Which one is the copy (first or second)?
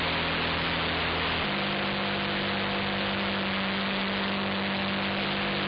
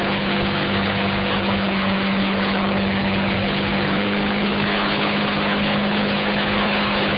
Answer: second